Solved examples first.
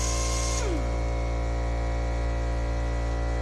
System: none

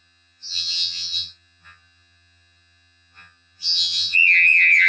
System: vocoder, HiFi-GAN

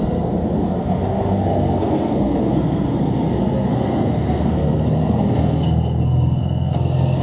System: codec, SNAC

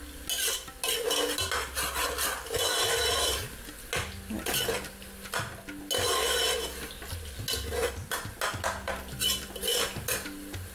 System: none